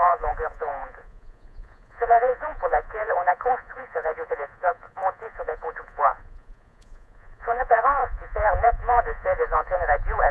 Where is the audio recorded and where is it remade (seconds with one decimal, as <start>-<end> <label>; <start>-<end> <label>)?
0.0-10.3 remade